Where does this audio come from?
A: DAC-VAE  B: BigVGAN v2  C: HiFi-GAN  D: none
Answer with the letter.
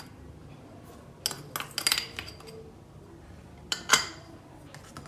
D